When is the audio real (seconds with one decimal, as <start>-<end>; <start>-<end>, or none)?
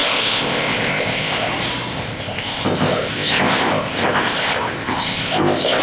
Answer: 1.5-1.9